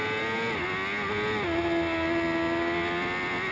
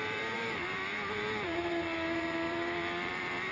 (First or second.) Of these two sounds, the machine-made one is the second